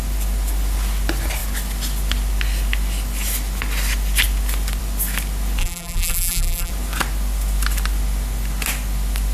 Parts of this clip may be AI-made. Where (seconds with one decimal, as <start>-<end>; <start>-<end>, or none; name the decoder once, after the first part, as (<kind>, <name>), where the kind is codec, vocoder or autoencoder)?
5.6-6.7 (vocoder, BigVGAN v2)